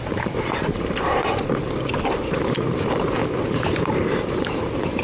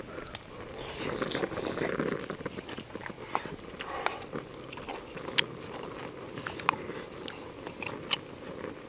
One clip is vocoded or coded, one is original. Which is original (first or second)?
second